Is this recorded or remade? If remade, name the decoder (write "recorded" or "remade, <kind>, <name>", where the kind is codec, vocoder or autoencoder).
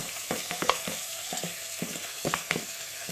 remade, codec, SNAC